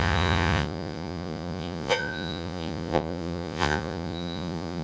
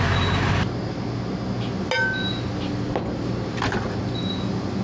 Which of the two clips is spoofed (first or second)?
first